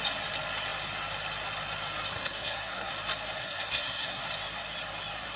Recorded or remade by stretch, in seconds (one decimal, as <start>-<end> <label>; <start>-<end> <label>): 0.0-2.1 recorded; 2.1-2.9 remade; 2.9-3.4 recorded; 3.4-4.2 remade; 4.2-5.4 recorded